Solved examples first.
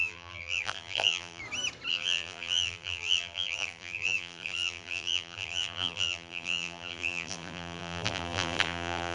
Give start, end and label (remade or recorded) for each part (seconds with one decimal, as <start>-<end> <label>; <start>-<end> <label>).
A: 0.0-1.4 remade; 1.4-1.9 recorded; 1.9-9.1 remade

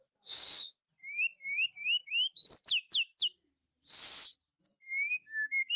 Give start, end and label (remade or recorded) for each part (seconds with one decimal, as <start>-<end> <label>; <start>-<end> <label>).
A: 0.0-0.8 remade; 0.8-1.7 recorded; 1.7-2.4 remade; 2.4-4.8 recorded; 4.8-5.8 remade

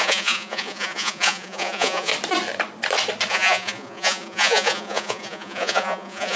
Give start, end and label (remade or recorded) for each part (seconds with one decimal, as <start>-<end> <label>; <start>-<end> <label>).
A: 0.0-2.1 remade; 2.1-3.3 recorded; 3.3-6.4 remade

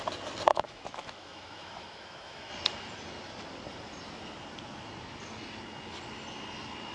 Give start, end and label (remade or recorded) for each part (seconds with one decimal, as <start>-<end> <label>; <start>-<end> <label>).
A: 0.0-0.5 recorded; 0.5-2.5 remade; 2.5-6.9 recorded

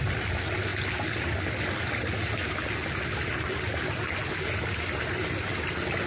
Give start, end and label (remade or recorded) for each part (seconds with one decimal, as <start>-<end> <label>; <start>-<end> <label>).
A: 0.0-6.1 recorded

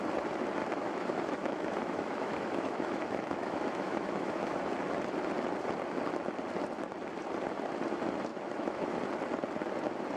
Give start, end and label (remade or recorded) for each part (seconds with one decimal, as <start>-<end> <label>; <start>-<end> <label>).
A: 0.0-0.6 recorded; 0.6-4.7 remade; 4.7-8.3 recorded; 8.3-9.0 remade; 9.0-10.2 recorded

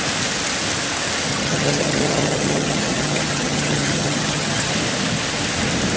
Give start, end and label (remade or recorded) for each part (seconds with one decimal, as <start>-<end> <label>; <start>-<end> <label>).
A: 0.0-1.3 recorded; 1.3-4.7 remade; 4.7-6.0 recorded